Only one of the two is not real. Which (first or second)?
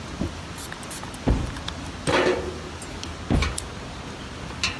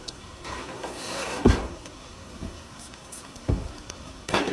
second